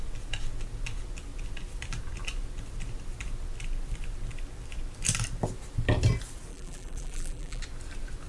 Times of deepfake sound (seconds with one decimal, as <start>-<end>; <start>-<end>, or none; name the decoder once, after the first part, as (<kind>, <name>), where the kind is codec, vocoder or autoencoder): 6.5-7.6 (vocoder, BigVGAN v2)